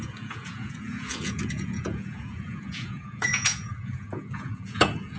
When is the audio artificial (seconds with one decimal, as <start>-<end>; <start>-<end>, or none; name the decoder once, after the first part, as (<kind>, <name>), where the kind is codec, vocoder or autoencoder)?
0.0-5.2 (vocoder, Vocos)